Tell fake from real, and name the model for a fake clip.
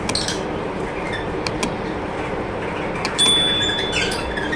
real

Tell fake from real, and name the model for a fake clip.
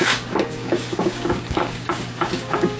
fake, codec, DAC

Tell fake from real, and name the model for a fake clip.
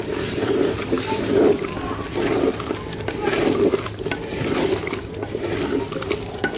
real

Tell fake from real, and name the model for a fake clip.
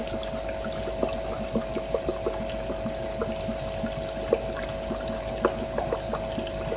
real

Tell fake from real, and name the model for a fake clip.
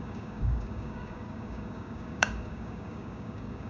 fake, codec, DAC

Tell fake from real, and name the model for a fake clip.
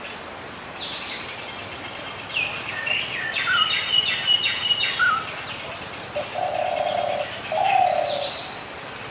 real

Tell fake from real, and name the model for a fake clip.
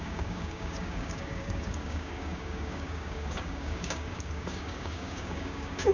fake, codec, DAC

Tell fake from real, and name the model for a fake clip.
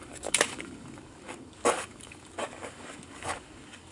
fake, codec, DAC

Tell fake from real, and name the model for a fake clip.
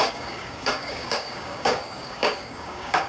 fake, codec, DAC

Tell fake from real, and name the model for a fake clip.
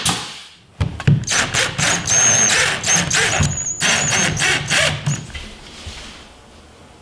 real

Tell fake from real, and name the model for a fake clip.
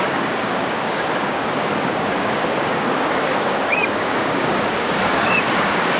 fake, codec, DAC